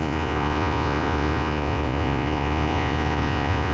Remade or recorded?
remade